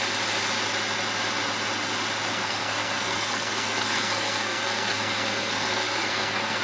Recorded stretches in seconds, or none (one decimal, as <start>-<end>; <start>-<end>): 0.0-2.3